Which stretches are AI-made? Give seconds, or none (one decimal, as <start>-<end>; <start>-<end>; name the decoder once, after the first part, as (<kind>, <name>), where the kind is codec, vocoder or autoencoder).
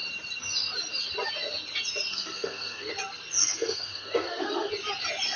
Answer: 2.1-2.9 (codec, SNAC); 3.4-4.7